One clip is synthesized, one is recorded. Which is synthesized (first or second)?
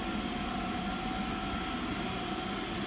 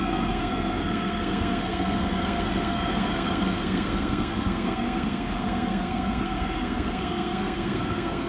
second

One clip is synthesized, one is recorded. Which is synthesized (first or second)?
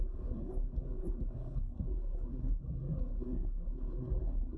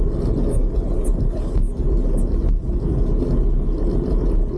first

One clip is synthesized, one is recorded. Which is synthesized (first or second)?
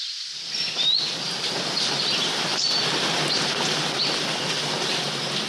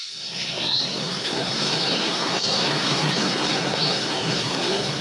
second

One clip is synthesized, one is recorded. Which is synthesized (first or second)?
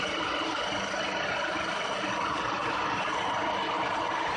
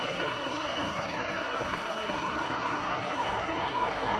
second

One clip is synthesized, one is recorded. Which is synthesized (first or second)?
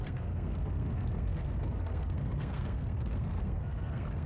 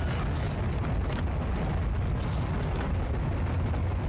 first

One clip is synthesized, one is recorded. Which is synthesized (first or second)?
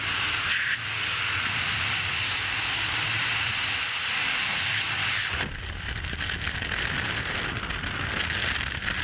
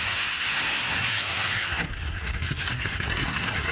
second